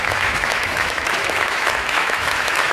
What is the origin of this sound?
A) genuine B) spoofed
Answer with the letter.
B